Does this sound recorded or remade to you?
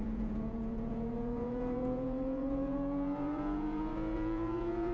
remade